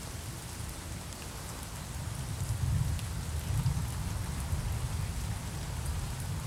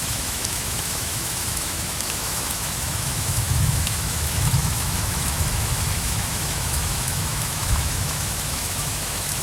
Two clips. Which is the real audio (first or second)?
first